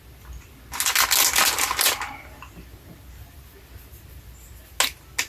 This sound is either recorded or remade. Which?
recorded